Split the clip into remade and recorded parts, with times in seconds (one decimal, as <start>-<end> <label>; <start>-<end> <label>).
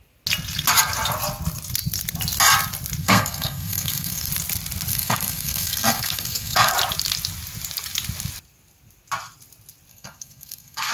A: 0.0-3.0 recorded; 3.0-4.3 remade; 4.3-4.9 recorded; 4.9-6.7 remade; 6.7-9.9 recorded; 9.9-10.9 remade